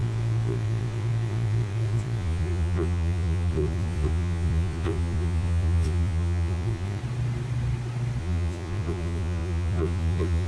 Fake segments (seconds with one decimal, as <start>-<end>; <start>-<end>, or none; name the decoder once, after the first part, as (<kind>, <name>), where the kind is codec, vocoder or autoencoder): 0.0-7.0 (vocoder, Vocos); 8.2-10.5